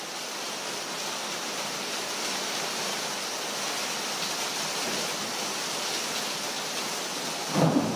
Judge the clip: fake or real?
real